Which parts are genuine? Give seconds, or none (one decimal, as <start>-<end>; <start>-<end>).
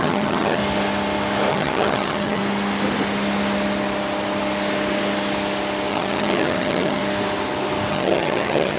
0.6-1.5; 2.4-5.9; 7.0-7.9